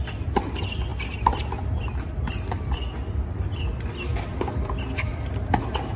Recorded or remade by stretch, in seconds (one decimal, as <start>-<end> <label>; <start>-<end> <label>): 0.0-6.0 recorded